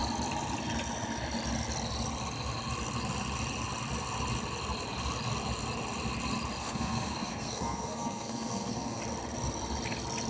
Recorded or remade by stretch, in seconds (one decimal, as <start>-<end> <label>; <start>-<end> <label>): 0.0-6.6 recorded; 6.6-9.0 remade; 9.0-10.3 recorded